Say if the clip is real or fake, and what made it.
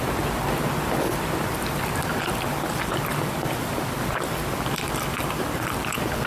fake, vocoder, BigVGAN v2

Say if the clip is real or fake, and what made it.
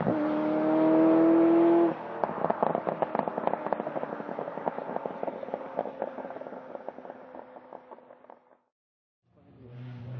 real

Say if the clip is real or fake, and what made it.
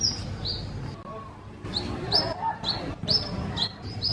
fake, vocoder, BigVGAN v2